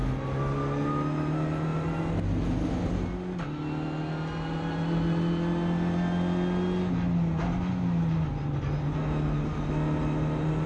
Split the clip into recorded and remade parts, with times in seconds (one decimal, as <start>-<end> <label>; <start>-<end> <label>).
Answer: 0.0-10.7 recorded